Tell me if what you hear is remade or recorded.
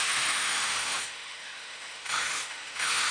remade